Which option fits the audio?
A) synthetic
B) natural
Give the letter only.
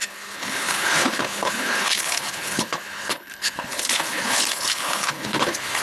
A